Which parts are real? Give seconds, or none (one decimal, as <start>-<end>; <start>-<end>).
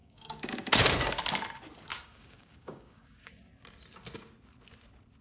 0.7-1.9; 3.5-5.2